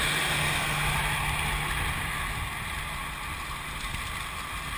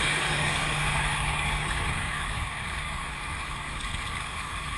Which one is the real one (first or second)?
first